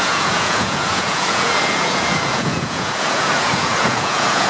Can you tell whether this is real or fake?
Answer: fake